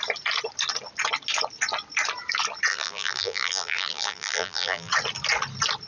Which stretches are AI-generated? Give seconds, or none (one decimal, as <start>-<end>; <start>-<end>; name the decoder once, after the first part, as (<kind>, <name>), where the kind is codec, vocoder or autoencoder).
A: 2.7-4.9 (vocoder, BigVGAN v2)